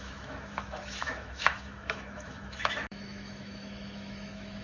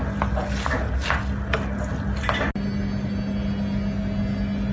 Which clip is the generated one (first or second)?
first